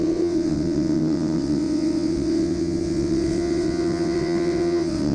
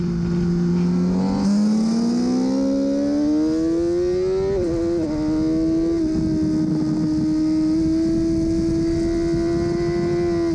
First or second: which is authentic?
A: second